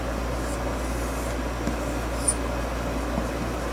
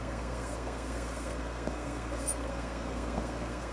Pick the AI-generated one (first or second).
second